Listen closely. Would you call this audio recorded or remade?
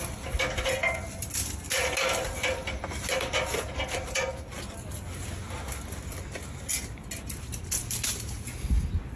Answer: recorded